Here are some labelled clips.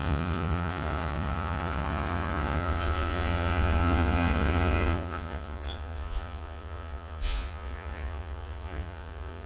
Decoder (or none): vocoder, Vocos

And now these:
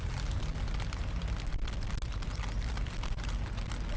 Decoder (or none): none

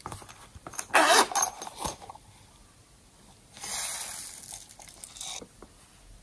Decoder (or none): none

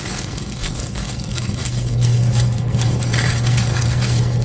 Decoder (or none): codec, SNAC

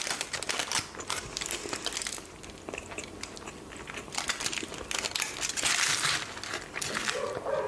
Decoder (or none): none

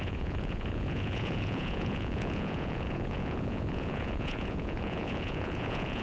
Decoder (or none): vocoder, Vocos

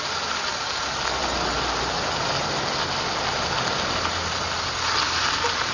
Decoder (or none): none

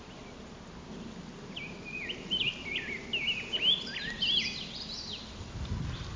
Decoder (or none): none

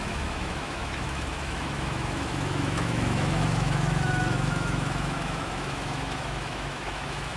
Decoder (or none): autoencoder, DAC-VAE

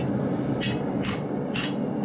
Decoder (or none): none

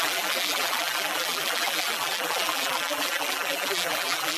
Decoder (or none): vocoder, BigVGAN v2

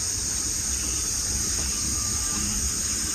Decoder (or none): none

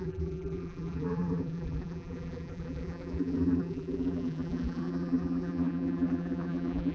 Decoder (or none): vocoder, BigVGAN v2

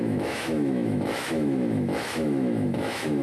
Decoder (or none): autoencoder, DAC-VAE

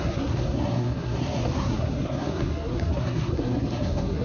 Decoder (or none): codec, SNAC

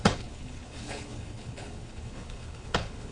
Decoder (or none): codec, HILCodec